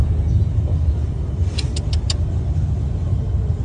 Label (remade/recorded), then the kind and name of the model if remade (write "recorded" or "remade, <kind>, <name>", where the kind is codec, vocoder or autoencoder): recorded